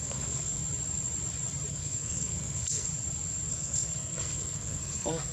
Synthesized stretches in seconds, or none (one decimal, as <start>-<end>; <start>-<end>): 0.0-0.6; 1.7-2.9; 3.5-5.3